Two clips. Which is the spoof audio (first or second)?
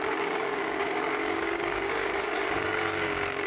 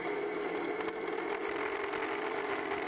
first